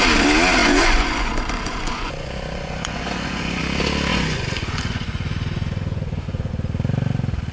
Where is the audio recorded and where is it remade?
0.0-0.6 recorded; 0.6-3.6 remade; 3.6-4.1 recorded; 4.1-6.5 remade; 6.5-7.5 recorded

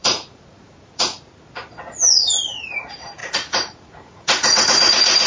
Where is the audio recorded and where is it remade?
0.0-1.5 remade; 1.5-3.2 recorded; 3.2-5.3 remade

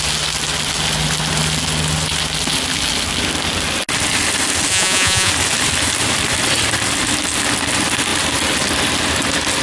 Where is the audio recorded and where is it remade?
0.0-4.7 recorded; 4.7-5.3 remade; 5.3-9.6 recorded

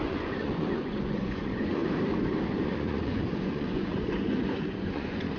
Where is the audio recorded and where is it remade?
0.0-1.8 remade; 1.8-2.5 recorded; 2.5-5.4 remade

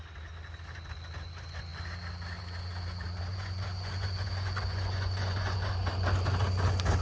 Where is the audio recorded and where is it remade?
0.0-3.3 recorded; 3.3-5.7 remade; 5.7-7.0 recorded

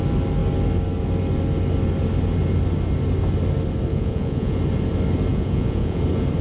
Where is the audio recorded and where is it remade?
0.0-3.9 recorded; 3.9-4.6 remade; 4.6-5.3 recorded; 5.3-6.0 remade; 6.0-6.4 recorded

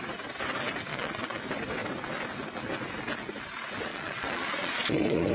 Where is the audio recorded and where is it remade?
0.0-0.9 recorded; 0.9-1.4 remade; 1.4-3.9 recorded; 3.9-5.3 remade

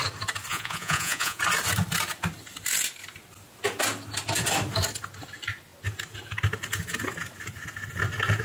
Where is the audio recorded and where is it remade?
0.0-0.5 recorded; 0.5-1.4 remade; 1.4-8.4 recorded